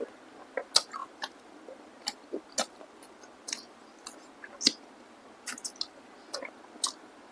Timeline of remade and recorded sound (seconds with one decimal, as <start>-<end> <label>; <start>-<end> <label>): 0.0-7.3 recorded